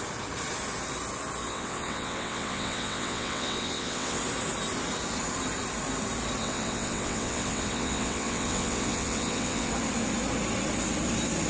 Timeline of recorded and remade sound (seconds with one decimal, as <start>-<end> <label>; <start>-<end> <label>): 0.0-1.4 recorded; 1.4-4.2 remade; 4.2-6.4 recorded; 6.4-9.7 remade; 9.7-11.5 recorded